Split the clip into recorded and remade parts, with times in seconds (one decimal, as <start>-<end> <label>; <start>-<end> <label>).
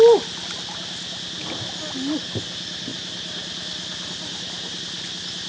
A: 0.0-5.5 recorded